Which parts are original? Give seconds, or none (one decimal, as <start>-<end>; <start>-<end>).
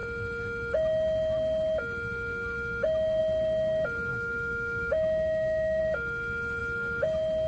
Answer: 0.0-4.1; 5.8-7.5